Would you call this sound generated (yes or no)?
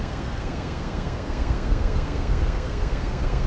yes